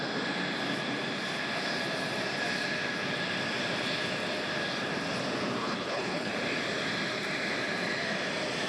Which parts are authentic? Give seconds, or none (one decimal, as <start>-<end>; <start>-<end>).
0.0-5.6; 6.3-8.7